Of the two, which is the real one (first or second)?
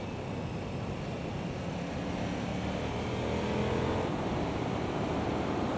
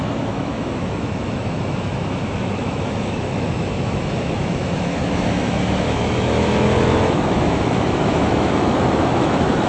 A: first